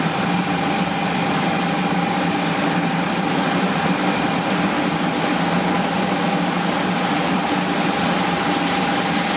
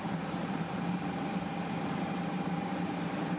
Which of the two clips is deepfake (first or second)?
second